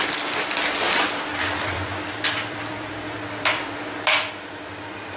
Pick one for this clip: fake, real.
fake